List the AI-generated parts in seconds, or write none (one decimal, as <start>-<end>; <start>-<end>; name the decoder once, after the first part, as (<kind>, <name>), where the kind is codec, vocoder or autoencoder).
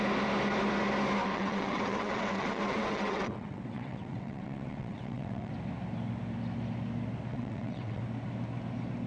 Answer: 1.2-5.5 (vocoder, WaveNeXt); 7.3-8.0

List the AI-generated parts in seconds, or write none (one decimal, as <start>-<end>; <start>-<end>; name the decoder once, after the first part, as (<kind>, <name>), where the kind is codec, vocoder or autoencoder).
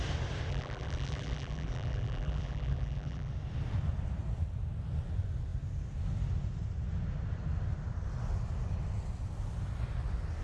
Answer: 0.5-3.3 (vocoder, BigVGAN v2)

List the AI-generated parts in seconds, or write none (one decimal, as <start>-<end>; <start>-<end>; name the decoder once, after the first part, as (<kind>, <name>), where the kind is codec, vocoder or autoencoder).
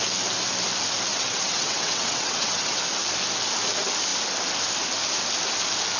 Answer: 1.1-2.8 (vocoder, WaveNeXt)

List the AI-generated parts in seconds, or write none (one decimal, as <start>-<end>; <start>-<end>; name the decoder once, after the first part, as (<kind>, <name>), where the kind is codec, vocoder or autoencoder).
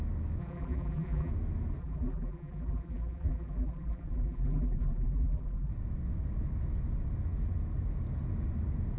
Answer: 0.4-1.3 (vocoder, BigVGAN v2); 1.8-5.7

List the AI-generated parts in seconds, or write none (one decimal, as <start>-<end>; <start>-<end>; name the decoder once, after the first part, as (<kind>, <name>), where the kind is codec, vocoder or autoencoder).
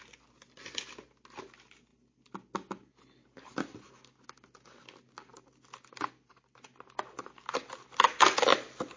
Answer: none